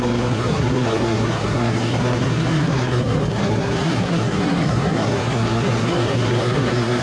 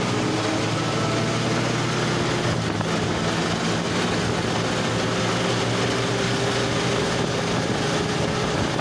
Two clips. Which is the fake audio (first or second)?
first